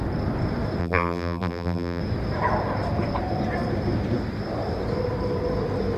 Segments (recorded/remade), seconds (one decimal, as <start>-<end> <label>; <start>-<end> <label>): 0.0-0.8 recorded; 0.8-2.0 remade; 2.0-6.0 recorded